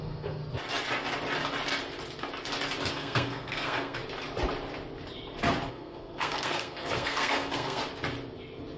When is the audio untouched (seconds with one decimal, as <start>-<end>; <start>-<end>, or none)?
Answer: 0.4-2.9; 4.0-5.7; 7.8-8.8